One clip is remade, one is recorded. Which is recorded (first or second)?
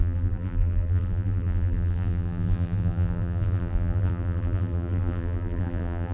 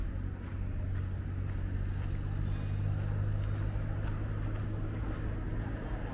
second